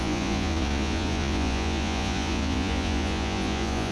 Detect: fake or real fake